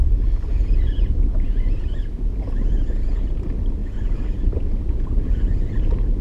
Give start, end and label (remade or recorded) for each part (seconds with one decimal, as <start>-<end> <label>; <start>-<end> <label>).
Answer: 0.0-0.5 recorded; 0.5-3.2 remade; 3.2-3.8 recorded; 3.8-6.2 remade